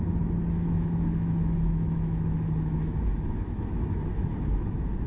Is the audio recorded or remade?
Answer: remade